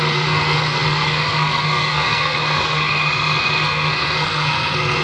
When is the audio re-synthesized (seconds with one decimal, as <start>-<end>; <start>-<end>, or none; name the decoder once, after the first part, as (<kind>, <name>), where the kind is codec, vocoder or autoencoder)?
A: 0.0-5.0 (codec, SNAC)